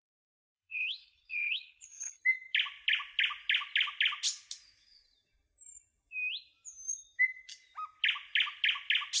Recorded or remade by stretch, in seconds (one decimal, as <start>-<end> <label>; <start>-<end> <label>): 0.0-2.2 remade; 2.2-9.2 recorded